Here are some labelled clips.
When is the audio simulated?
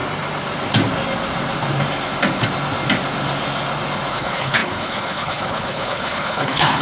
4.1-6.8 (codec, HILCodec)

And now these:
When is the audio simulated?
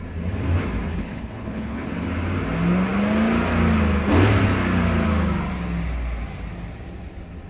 0.9-1.9 (codec, HILCodec)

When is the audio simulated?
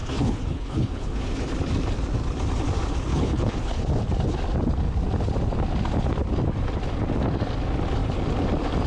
0.0-1.5 (codec, HILCodec); 3.1-3.9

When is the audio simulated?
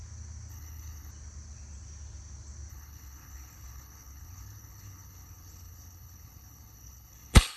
0.5-1.1 (codec, HILCodec); 2.7-7.6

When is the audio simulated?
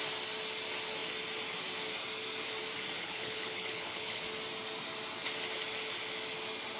3.0-4.2 (codec, HILCodec)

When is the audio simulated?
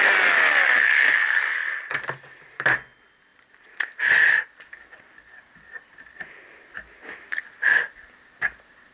none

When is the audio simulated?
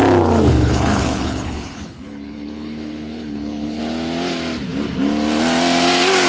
0.5-3.8 (codec, HILCodec)